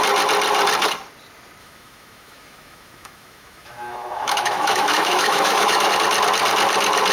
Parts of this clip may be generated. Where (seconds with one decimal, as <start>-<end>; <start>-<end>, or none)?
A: 1.6-5.9